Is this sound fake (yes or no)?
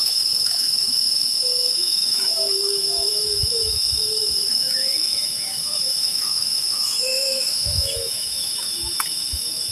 yes